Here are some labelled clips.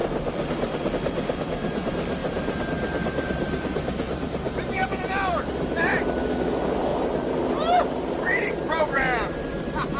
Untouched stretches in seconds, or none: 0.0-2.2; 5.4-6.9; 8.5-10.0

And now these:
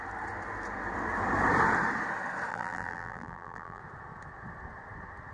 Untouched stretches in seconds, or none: 0.0-2.5; 3.8-5.3

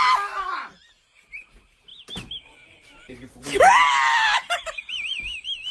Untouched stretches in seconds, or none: 1.9-4.6

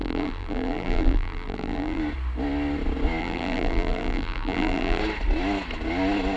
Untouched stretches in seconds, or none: 2.0-3.2; 5.0-6.4

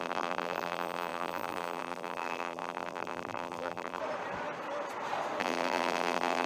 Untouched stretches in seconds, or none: 4.0-5.4

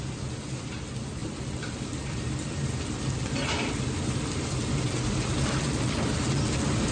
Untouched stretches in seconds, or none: 0.0-1.2; 5.3-6.9